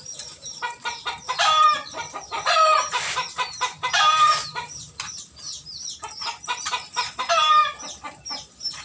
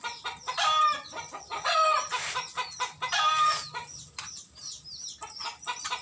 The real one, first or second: second